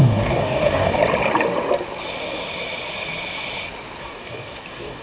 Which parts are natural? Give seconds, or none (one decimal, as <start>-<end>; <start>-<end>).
1.0-4.0

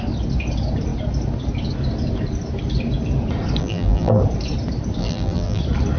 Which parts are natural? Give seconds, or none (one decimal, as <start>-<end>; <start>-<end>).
0.0-3.6; 4.2-5.0; 5.6-6.0

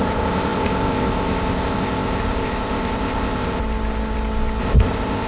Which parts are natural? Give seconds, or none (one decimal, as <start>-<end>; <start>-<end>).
3.6-4.6

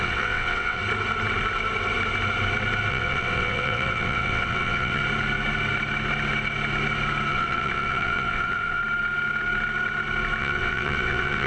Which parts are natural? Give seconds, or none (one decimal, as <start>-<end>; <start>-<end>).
0.8-2.9; 5.0-7.3; 8.8-10.4

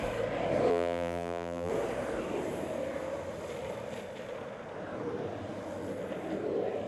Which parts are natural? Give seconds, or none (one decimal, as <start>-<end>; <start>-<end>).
0.0-0.7; 1.7-6.9